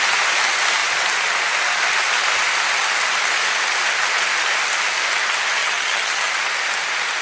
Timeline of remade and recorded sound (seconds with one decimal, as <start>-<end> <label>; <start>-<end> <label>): 0.0-5.6 recorded; 5.6-6.3 remade; 6.3-7.2 recorded